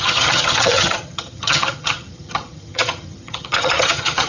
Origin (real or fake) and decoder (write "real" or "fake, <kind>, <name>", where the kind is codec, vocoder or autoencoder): fake, vocoder, HiFi-GAN